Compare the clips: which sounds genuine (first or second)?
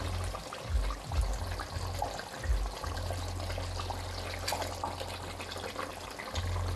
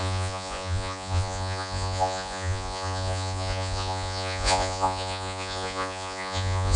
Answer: first